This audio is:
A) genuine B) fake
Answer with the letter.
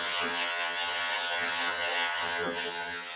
B